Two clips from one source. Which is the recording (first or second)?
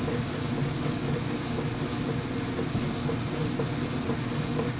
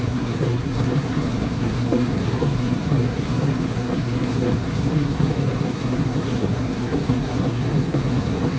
first